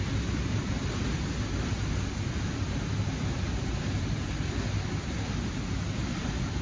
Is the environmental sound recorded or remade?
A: recorded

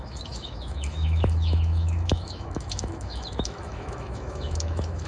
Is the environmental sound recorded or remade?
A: remade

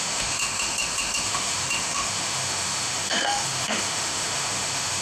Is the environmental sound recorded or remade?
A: remade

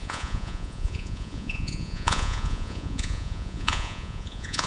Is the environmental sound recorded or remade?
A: remade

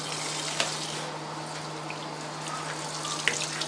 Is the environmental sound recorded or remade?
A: recorded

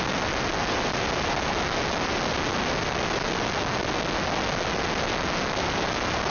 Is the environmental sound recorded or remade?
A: recorded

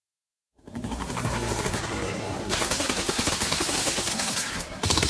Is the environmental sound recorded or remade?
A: remade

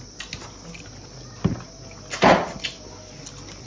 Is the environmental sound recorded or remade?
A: recorded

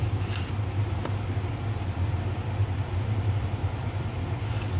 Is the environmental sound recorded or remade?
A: remade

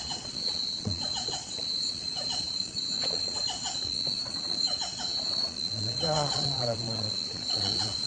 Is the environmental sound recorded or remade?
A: remade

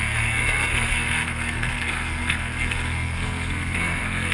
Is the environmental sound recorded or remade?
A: remade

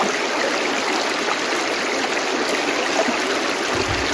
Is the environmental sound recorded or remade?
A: recorded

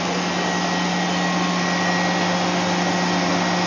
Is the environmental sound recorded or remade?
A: recorded